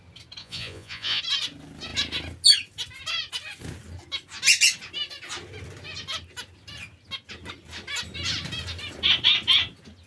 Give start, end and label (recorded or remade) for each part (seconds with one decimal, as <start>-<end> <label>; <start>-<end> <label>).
0.0-0.4 recorded; 0.4-1.2 remade; 1.2-10.1 recorded

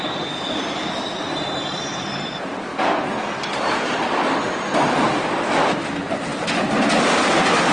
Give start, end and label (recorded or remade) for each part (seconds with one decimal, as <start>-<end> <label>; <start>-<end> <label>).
0.0-2.7 remade; 2.7-5.5 recorded; 5.5-7.7 remade